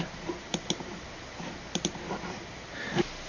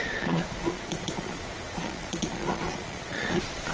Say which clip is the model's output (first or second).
second